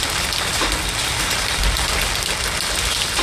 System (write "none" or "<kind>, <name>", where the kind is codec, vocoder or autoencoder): none